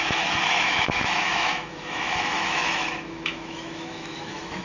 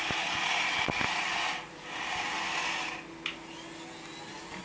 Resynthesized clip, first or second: first